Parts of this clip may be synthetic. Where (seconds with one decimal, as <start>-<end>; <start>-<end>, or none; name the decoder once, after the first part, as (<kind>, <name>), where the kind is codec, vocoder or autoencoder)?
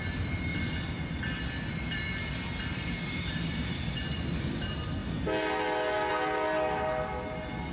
0.5-4.2 (vocoder, BigVGAN v2)